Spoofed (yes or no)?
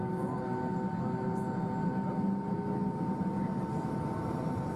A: no